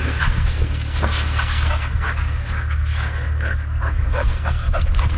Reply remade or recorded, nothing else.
remade